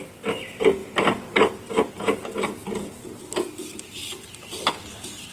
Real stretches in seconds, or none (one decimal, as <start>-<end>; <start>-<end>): 0.0-5.3